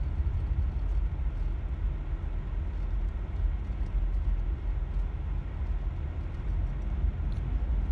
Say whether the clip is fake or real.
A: real